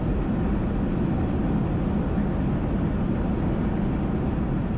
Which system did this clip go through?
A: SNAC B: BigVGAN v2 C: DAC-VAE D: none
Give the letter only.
D